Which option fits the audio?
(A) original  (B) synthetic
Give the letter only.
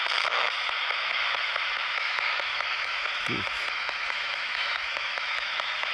B